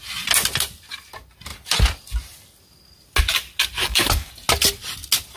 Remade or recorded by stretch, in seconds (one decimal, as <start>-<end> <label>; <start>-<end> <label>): 0.0-3.8 recorded; 3.8-4.3 remade; 4.3-5.4 recorded